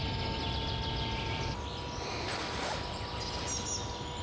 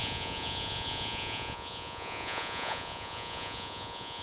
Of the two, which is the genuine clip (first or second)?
first